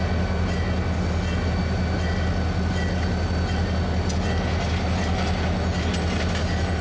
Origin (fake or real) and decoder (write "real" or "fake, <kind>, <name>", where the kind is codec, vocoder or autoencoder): real